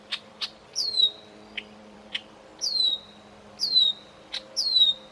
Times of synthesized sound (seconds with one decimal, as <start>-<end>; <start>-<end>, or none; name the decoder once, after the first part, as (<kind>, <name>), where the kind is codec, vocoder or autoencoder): 0.0-2.5 (vocoder, BigVGAN v2)